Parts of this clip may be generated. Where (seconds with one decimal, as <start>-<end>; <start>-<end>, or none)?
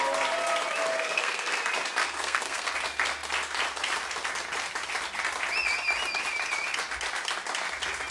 0.9-1.6; 2.0-2.7